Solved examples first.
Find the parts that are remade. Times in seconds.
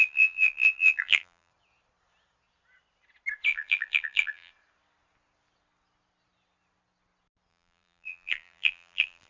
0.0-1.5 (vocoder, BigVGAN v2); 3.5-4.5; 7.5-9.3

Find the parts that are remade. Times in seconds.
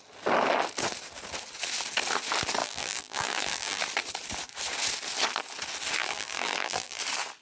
2.6-3.8 (vocoder, BigVGAN v2); 6.0-7.0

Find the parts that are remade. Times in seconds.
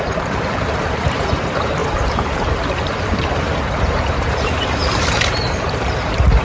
0.0-6.4 (vocoder, BigVGAN v2)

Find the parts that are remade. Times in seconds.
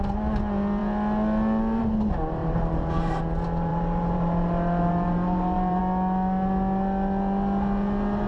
2.4-3.2 (vocoder, BigVGAN v2); 3.7-5.8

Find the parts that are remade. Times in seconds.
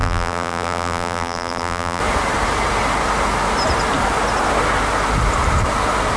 0.0-2.0 (vocoder, BigVGAN v2)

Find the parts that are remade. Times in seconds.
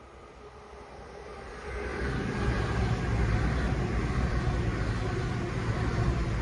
none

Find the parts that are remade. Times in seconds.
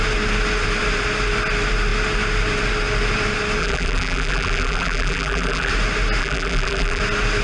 3.6-5.7 (vocoder, BigVGAN v2); 6.2-7.0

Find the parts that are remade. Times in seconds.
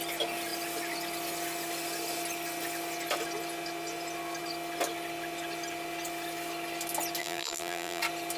7.2-8.0 (vocoder, BigVGAN v2)